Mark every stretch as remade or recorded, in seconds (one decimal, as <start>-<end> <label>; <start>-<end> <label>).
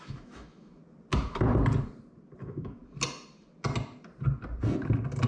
0.0-0.8 remade; 0.8-2.4 recorded; 2.4-2.8 remade; 2.8-5.3 recorded